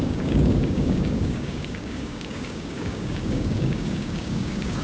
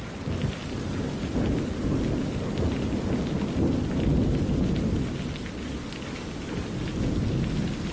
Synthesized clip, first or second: first